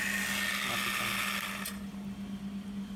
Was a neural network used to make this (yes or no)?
no